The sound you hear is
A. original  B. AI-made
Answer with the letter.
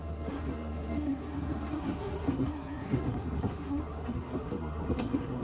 B